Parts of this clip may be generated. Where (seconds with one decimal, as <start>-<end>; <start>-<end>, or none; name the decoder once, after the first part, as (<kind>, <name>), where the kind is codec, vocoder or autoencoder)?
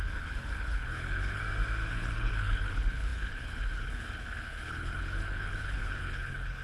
0.0-1.4 (codec, HILCodec); 1.9-6.6